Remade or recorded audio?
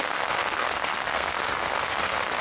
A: remade